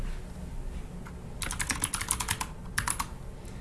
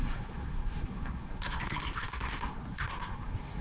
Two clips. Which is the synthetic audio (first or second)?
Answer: second